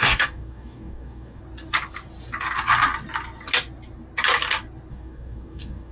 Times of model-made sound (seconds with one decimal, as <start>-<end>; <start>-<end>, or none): 0.0-1.4; 4.9-5.9